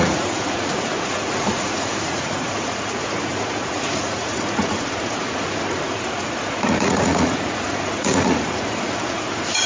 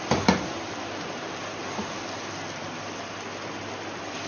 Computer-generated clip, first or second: first